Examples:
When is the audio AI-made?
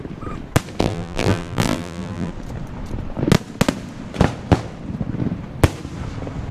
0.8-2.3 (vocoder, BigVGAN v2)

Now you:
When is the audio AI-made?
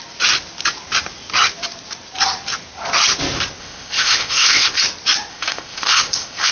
3.6-4.8 (codec, ZipCodec); 5.3-6.5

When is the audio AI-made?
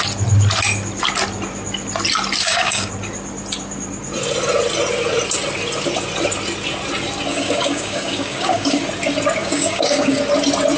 2.4-2.9 (codec, DAC); 7.3-8.8; 9.4-10.2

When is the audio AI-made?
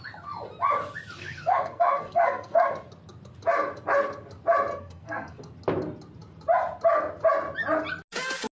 1.2-2.7 (codec, SNAC); 4.7-5.4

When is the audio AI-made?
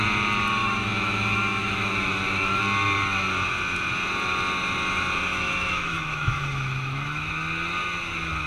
0.6-2.6 (autoencoder, DAC-VAE); 5.3-7.3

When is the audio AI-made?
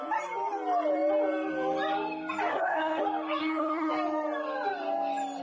2.5-3.0 (codec, SNAC); 3.4-3.9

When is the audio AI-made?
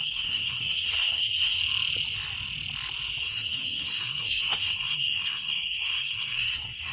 0.0-1.6 (codec, SNAC); 3.2-6.9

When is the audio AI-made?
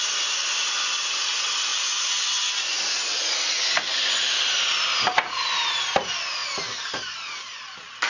none